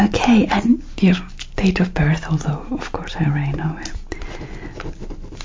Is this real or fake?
real